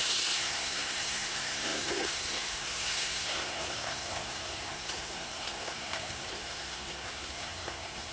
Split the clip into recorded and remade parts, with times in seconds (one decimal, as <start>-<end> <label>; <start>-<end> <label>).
0.0-8.1 remade